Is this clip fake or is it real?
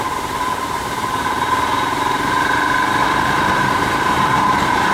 fake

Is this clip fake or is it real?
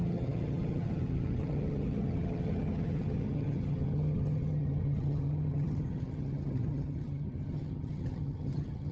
fake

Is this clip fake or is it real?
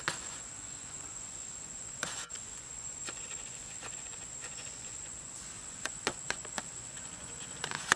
fake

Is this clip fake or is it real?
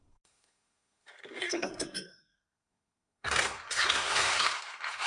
fake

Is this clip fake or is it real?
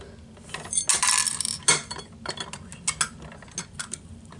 real